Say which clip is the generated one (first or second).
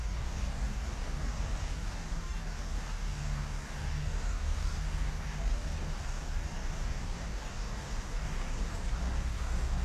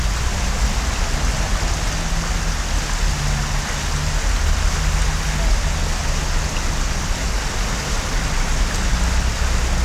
first